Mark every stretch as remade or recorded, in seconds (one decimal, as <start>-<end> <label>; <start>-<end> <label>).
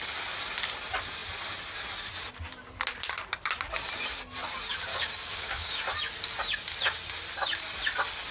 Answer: 0.0-4.9 recorded; 4.9-5.8 remade; 5.8-8.3 recorded